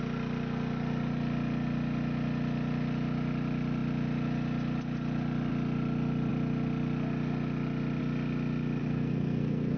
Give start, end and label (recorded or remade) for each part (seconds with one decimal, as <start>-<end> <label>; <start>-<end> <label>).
0.0-8.8 recorded; 8.8-9.8 remade